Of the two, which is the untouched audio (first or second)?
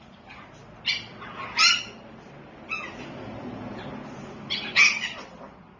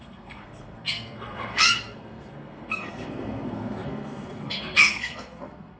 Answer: first